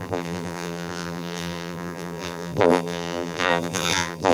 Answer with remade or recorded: remade